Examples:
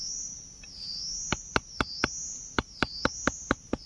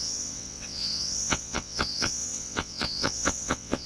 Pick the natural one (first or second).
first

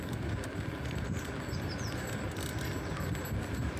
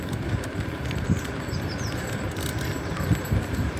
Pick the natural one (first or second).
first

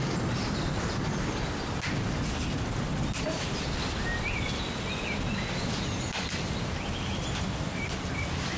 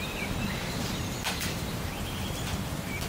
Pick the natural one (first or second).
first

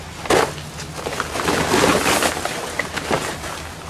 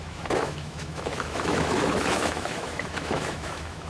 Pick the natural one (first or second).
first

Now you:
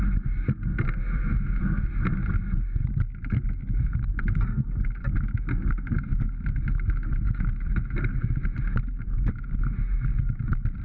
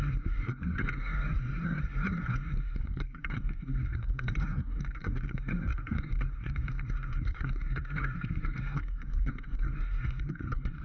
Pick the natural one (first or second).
first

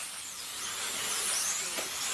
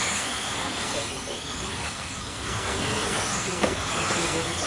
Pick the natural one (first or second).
first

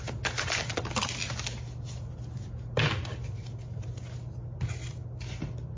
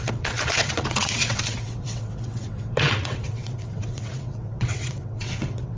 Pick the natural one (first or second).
first